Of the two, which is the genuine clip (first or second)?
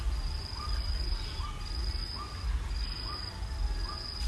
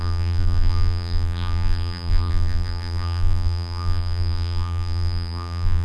first